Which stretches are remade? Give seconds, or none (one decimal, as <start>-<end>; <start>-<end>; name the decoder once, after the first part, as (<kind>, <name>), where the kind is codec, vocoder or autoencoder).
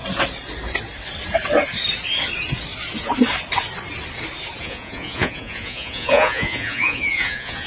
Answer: 4.6-7.7 (vocoder, Vocos)